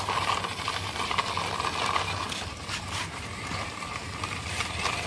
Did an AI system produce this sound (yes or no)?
no